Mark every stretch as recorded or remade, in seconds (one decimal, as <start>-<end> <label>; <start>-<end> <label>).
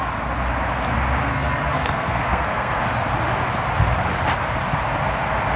0.0-1.2 recorded; 1.2-2.8 remade; 2.8-5.6 recorded